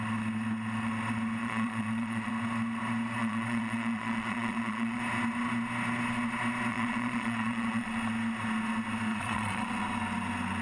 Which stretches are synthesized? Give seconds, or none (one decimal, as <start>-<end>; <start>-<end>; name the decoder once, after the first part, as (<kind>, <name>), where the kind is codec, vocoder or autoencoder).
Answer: 1.4-2.3 (vocoder, Vocos); 3.2-5.0; 6.7-7.9; 9.1-9.7

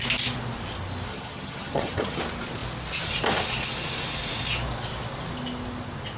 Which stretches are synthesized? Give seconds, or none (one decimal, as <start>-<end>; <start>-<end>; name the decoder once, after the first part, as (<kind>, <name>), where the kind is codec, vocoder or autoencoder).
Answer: 1.1-2.2 (vocoder, HiFi-GAN)

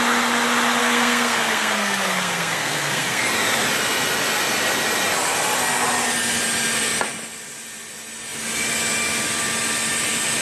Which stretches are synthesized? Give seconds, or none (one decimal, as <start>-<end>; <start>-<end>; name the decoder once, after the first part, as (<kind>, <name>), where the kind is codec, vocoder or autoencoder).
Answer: 0.8-3.2 (codec, SNAC)

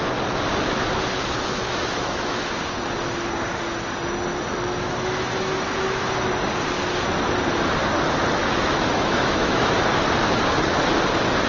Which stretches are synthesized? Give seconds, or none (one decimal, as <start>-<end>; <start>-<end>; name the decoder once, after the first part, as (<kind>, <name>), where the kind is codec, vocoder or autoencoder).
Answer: 1.6-2.5 (autoencoder, DAC-VAE); 4.3-6.1; 8.4-9.8

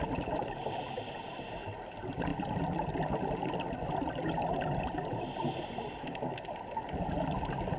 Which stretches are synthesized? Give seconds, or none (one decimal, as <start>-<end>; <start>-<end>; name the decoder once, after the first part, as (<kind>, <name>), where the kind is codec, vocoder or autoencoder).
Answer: none

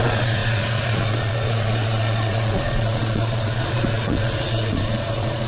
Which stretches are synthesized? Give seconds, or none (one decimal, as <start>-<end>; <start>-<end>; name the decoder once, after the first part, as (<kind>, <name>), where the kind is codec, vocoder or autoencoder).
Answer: 0.0-5.5 (vocoder, Vocos)

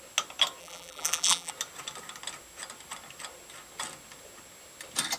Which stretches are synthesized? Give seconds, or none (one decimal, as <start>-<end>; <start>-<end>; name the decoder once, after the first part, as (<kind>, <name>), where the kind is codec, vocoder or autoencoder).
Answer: 0.6-1.5 (vocoder, BigVGAN v2)